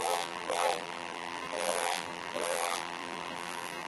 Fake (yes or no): yes